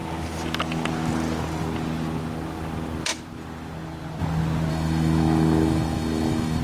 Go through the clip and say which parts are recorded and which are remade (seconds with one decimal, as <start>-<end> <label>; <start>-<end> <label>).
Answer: 0.0-4.7 recorded; 4.7-6.6 remade